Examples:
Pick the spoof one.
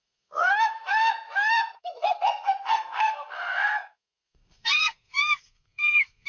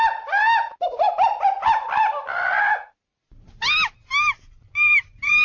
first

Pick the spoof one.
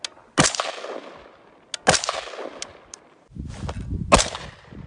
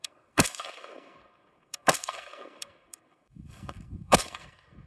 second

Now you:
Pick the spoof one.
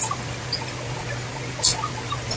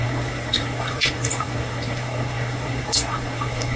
second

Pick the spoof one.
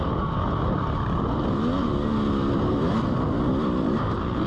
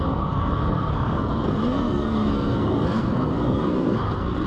second